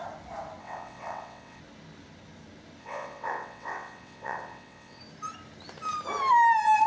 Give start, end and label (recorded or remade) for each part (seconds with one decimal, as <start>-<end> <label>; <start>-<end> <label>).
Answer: 0.0-0.6 recorded; 0.6-1.6 remade; 1.6-2.8 recorded; 2.8-5.0 remade; 5.0-6.9 recorded